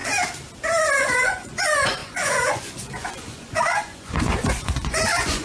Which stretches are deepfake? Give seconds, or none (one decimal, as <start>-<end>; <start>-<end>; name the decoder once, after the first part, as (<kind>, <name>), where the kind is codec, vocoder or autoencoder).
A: 1.0-5.4 (vocoder, Vocos)